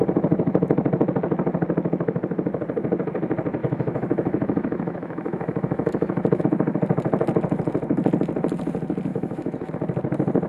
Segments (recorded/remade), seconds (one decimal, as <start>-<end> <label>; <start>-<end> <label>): 0.0-3.6 recorded; 3.6-6.4 remade; 6.4-9.1 recorded; 9.1-9.7 remade; 9.7-10.5 recorded